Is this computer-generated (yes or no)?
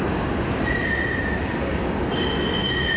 no